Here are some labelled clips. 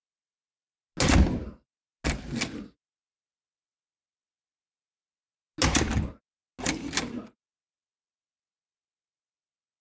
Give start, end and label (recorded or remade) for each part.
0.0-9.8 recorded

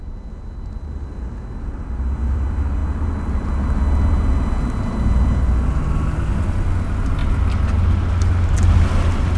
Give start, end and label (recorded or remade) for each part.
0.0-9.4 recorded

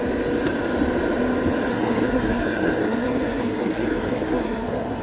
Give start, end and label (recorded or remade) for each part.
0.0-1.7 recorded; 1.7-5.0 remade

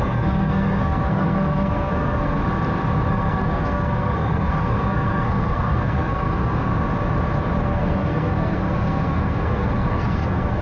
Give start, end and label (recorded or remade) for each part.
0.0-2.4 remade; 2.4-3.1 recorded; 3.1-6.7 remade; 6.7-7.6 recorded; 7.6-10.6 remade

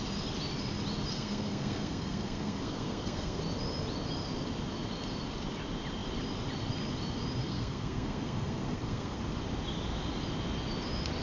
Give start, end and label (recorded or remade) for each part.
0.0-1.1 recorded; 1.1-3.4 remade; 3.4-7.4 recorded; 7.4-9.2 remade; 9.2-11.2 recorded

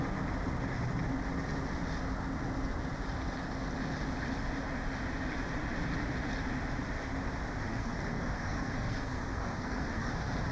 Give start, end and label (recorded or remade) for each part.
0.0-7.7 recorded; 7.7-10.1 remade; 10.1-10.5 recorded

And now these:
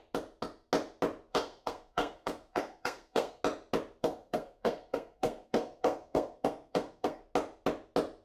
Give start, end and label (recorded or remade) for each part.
0.0-1.3 recorded; 1.3-3.4 remade; 3.4-4.0 recorded; 4.0-7.2 remade; 7.2-8.2 recorded

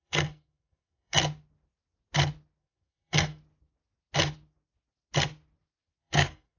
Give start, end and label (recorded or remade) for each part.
0.0-1.2 remade; 1.2-2.6 recorded; 2.6-3.4 remade; 3.4-6.0 recorded; 6.0-6.6 remade